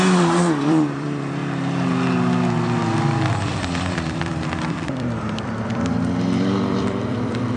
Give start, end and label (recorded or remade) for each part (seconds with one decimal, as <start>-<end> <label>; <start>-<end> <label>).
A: 0.0-1.4 remade; 1.4-3.3 recorded; 3.3-7.6 remade